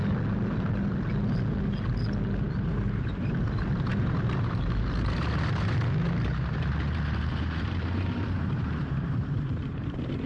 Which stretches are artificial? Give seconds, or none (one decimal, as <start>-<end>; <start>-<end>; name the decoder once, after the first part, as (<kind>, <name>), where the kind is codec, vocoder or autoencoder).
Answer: 2.6-10.3 (vocoder, BigVGAN v2)